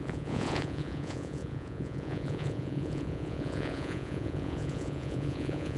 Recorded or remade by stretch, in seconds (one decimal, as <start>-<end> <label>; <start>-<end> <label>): 0.0-5.8 remade